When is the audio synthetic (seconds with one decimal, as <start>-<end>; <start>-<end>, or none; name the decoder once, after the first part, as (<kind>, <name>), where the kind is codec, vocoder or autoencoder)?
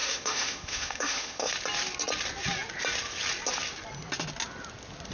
0.0-1.5 (autoencoder, DAC-VAE)